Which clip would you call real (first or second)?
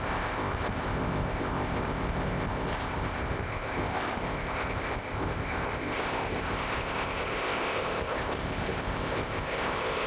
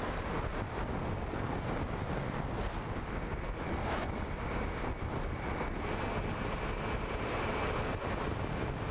second